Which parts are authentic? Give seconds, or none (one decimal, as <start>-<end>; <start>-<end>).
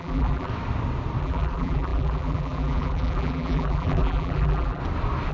0.5-1.2; 4.8-5.3